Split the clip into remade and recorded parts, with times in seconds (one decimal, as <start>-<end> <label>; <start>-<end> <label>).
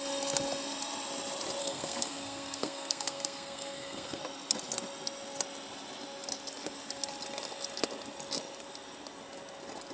0.0-1.6 recorded; 1.6-4.2 remade; 4.2-9.9 recorded